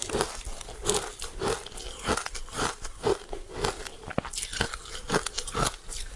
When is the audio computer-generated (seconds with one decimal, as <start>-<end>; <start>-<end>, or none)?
none